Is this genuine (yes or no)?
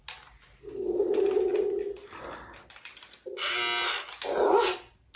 yes